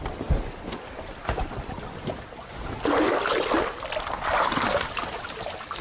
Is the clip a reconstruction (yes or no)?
no